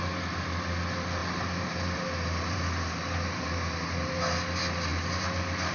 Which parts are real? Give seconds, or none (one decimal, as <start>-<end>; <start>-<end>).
0.0-1.2; 4.2-5.7